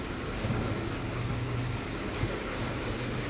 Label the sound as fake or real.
fake